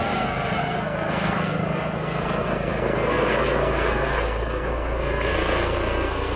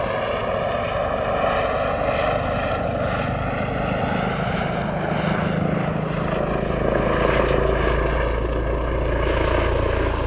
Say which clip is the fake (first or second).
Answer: first